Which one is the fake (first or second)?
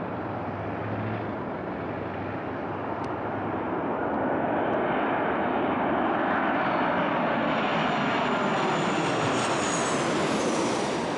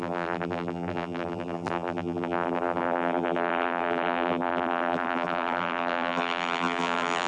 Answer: second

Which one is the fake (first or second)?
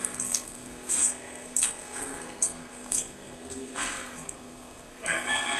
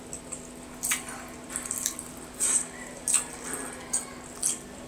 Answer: first